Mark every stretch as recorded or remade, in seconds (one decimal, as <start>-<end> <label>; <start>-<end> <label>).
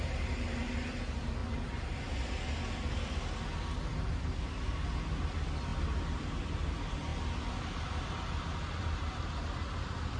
0.0-10.2 recorded